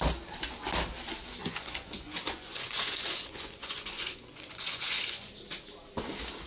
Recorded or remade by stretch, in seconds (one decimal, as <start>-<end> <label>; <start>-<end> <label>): 0.0-1.4 recorded; 1.4-5.3 remade; 5.3-6.5 recorded